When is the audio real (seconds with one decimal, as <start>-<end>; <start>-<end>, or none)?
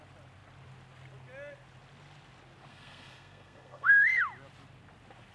0.0-2.7; 4.2-5.3